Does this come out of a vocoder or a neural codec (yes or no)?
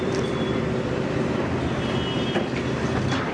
yes